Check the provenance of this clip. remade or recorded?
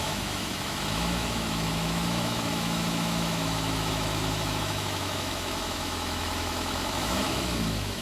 remade